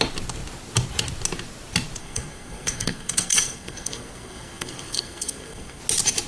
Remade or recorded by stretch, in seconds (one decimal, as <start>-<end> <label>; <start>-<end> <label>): 0.0-2.0 recorded; 2.0-5.8 remade; 5.8-6.3 recorded